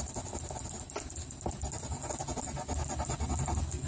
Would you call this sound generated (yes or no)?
no